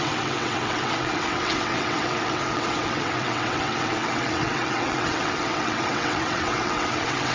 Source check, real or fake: fake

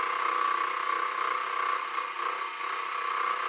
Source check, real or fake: real